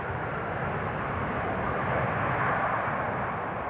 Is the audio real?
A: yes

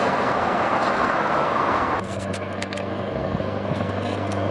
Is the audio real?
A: no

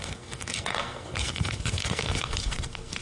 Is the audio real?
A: no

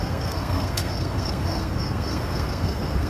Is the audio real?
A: no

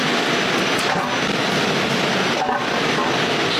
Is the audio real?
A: yes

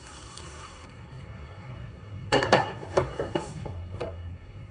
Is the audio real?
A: no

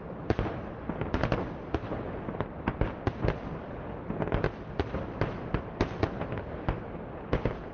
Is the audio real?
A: yes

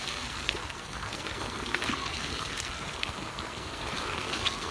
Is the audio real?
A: no